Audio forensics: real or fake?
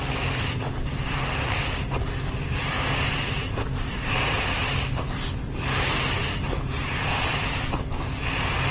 fake